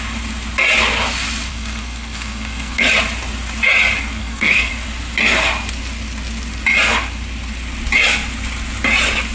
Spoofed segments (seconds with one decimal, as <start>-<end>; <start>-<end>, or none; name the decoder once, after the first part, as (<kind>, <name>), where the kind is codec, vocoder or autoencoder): 1.5-2.8 (codec, SNAC); 4.2-4.7